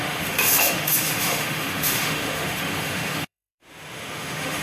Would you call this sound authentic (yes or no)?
no